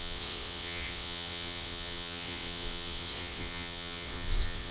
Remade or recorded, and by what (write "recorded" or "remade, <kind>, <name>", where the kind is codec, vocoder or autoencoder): remade, vocoder, WaveNeXt